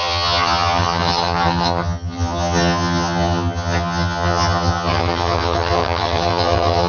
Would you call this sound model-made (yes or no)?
yes